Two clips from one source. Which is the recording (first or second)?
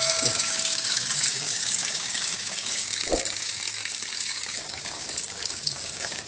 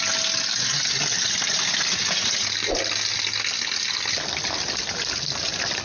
second